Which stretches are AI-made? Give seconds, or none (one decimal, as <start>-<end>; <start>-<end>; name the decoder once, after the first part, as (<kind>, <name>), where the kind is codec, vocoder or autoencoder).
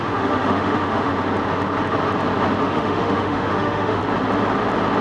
0.0-1.1 (autoencoder, DAC-VAE); 2.6-4.0